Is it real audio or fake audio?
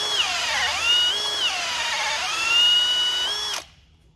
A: real